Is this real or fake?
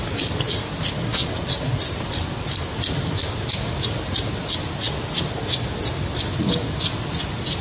real